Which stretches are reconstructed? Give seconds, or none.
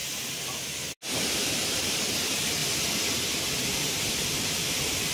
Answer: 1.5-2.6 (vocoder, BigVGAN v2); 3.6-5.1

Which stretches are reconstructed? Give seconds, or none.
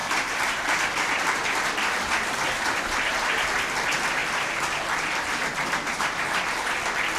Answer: 0.0-2.8 (vocoder, BigVGAN v2); 4.2-5.0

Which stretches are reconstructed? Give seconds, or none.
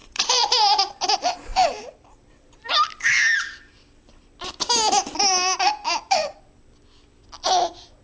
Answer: 0.0-0.9 (vocoder, BigVGAN v2); 1.5-3.7; 5.8-6.4